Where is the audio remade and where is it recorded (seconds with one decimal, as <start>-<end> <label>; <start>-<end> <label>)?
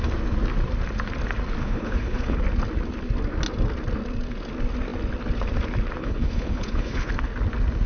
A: 0.0-1.6 recorded; 1.6-2.4 remade; 2.4-6.0 recorded; 6.0-7.1 remade; 7.1-7.9 recorded